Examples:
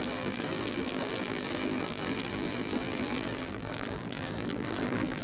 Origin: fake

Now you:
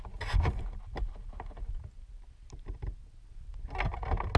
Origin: real